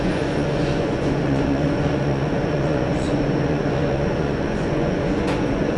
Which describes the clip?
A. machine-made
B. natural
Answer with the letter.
A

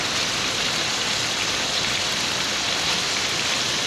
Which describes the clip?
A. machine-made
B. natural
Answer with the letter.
B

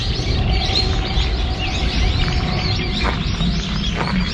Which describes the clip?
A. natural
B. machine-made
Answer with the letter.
A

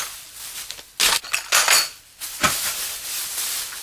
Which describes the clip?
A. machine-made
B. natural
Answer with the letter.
B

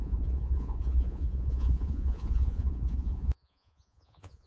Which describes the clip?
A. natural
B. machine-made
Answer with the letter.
B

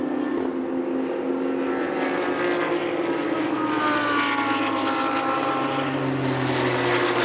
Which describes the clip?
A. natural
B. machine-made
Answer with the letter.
A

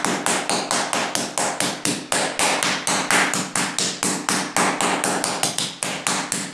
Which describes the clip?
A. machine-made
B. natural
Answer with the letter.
B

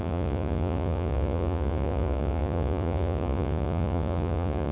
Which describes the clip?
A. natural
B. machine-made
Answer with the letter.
B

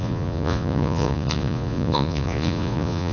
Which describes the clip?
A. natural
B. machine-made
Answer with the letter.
B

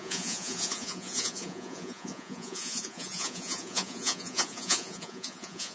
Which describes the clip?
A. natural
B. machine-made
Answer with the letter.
B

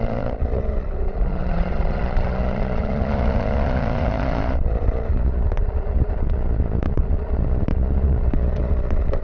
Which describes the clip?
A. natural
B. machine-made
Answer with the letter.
B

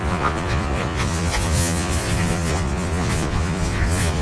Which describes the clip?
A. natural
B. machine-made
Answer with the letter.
B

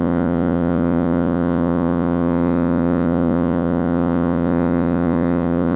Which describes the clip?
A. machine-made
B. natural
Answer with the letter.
A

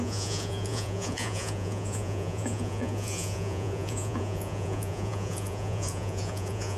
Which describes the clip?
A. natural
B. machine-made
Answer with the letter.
B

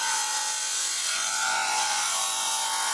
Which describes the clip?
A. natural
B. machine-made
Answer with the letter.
B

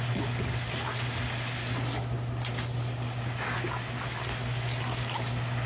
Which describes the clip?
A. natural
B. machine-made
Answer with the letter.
A